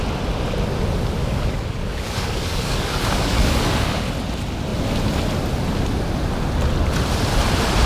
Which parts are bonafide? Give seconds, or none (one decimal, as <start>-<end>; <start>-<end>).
0.0-1.2; 4.1-7.9